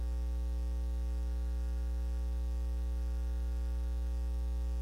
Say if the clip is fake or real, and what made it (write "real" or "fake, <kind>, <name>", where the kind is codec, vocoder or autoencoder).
real